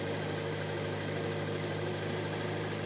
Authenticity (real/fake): real